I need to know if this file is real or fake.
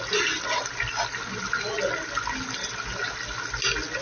real